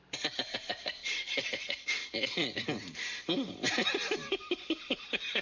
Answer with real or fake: fake